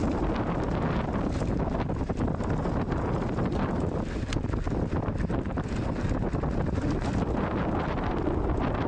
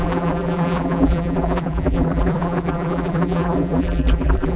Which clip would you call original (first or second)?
first